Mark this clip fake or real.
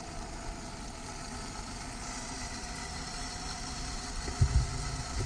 real